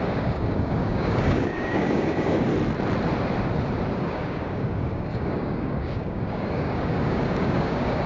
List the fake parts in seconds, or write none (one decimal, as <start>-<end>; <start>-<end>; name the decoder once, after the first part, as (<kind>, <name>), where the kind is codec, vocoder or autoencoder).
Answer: 0.0-2.5 (codec, DAC); 3.9-8.1